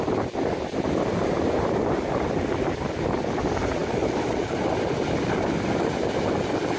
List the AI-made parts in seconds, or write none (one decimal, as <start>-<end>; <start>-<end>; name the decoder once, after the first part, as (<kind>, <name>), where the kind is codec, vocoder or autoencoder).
3.8-4.7 (vocoder, BigVGAN v2)